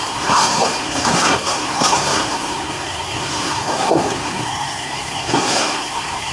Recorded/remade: remade